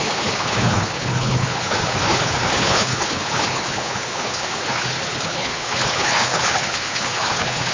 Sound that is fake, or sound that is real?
fake